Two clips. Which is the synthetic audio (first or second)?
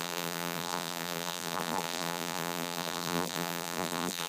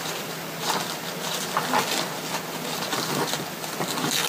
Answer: first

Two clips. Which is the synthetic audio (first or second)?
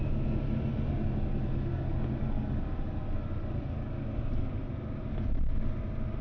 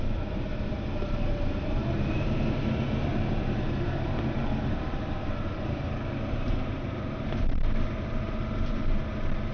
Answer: second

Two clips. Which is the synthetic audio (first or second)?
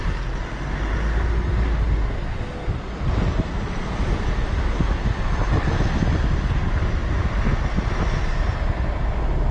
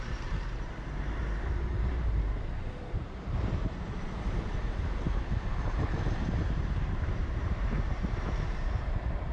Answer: second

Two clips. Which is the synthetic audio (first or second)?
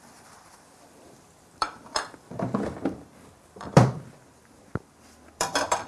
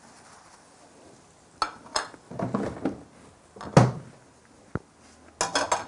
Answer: first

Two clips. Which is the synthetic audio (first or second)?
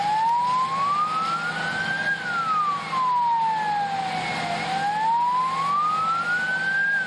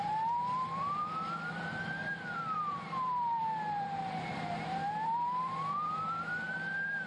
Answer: second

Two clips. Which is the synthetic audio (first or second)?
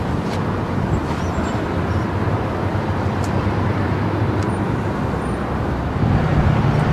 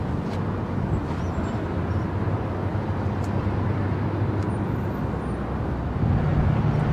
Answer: first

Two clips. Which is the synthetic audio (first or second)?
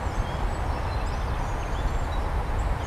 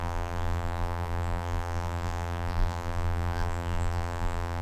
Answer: second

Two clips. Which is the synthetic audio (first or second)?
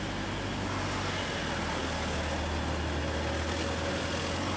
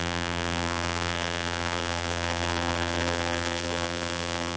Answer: second